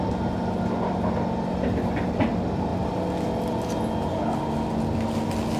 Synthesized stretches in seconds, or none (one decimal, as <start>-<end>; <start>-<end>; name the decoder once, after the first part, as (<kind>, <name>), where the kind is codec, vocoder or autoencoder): none